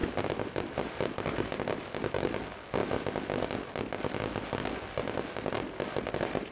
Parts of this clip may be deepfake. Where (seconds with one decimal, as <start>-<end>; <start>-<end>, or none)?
0.0-2.1